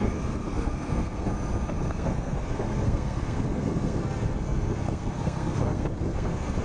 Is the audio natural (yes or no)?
no